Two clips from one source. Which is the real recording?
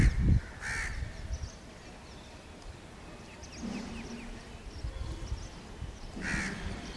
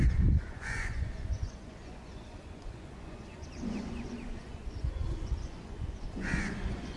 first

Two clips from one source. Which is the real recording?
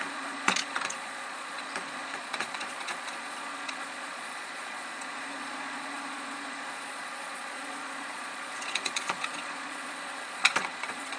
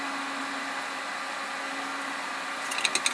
second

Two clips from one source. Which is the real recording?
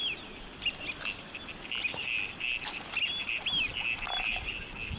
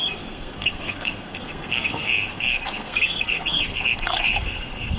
first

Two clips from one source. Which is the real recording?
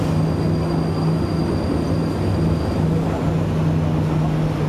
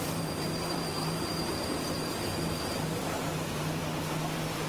first